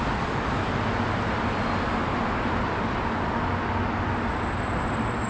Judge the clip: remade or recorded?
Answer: recorded